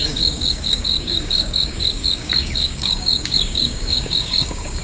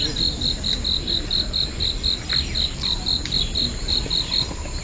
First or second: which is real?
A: second